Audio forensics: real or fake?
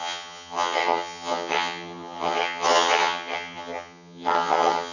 fake